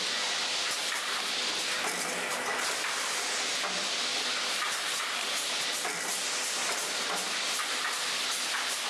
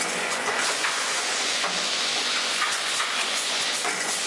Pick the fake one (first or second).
second